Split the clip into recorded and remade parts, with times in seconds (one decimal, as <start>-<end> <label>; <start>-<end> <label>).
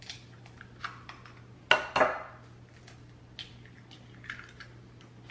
0.0-5.3 recorded